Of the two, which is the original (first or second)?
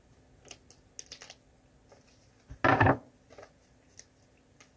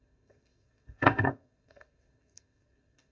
first